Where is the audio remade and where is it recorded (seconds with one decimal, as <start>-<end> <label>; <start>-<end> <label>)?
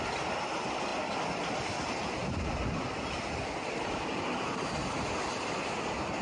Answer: 0.0-0.9 remade; 0.9-1.7 recorded; 1.7-6.2 remade